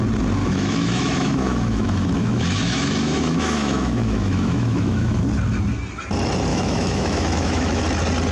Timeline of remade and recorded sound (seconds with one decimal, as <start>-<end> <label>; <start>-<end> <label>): 0.0-0.4 recorded; 0.4-5.2 remade; 5.2-6.5 recorded; 6.5-7.8 remade; 7.8-8.3 recorded